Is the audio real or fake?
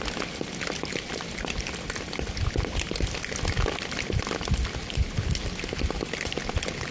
real